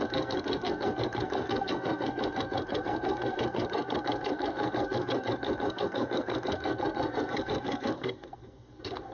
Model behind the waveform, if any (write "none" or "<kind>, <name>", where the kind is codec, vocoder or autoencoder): codec, SNAC